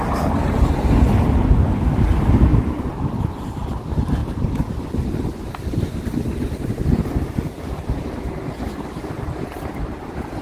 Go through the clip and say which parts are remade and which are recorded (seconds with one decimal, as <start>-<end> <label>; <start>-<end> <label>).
0.0-10.4 recorded